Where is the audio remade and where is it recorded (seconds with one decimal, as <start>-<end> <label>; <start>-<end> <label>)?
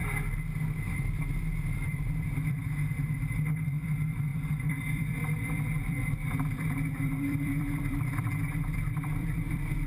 0.0-0.9 recorded; 0.9-9.9 remade